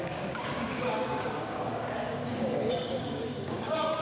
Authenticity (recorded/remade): remade